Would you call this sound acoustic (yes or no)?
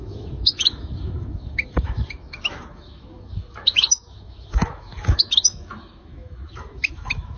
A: no